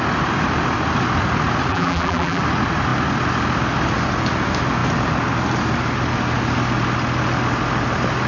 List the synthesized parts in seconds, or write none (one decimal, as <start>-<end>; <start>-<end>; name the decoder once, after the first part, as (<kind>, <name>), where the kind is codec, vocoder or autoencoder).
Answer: 1.7-2.4 (vocoder, BigVGAN v2)